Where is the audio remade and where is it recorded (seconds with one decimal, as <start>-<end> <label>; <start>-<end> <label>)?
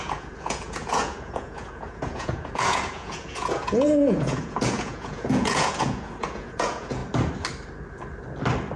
0.0-7.0 remade; 7.0-8.8 recorded